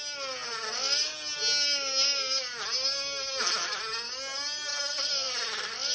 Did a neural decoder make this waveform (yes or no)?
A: no